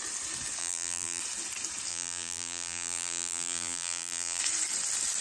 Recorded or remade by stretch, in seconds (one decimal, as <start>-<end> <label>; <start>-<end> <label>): 0.0-0.6 recorded; 0.6-1.2 remade; 1.2-1.9 recorded; 1.9-4.4 remade; 4.4-5.2 recorded

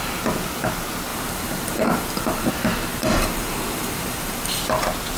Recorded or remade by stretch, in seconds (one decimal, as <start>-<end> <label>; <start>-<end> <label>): 0.0-1.1 recorded; 1.1-2.5 remade; 2.5-2.9 recorded; 2.9-4.6 remade; 4.6-5.2 recorded

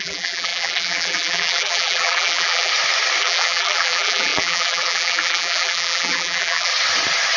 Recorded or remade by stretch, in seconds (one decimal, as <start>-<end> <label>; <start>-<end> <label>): 0.0-2.7 remade; 2.7-3.2 recorded; 3.2-6.7 remade; 6.7-7.4 recorded

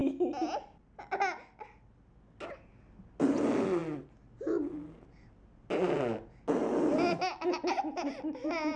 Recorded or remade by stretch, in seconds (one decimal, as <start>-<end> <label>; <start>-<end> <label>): 0.0-8.8 recorded

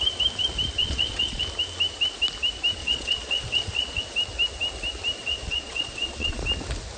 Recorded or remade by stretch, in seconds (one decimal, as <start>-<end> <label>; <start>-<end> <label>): 0.0-0.8 recorded; 0.8-1.4 remade; 1.4-2.8 recorded; 2.8-4.0 remade; 4.0-5.2 recorded; 5.2-6.4 remade; 6.4-7.0 recorded

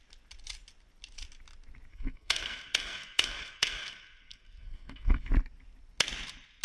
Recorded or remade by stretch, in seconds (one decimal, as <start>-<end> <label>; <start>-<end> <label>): 0.0-1.9 recorded; 1.9-5.3 remade; 5.3-6.6 recorded

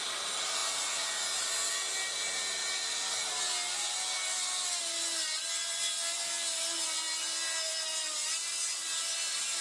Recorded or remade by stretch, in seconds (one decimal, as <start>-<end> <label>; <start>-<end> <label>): 0.0-9.6 recorded